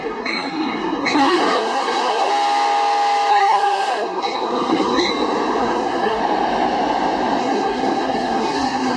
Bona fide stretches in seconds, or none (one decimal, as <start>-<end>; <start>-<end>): 2.3-3.3; 5.1-5.6; 6.2-7.4